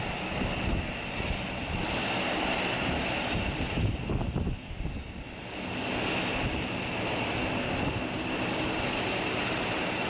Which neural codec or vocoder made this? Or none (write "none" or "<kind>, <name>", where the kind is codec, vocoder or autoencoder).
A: none